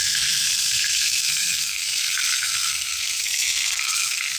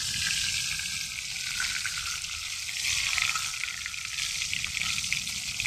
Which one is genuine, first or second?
second